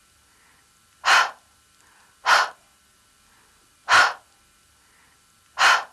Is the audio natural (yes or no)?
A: yes